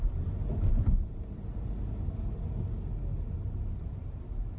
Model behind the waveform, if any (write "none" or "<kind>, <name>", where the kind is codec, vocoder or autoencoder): none